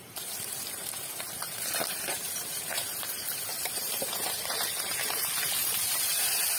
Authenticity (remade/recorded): remade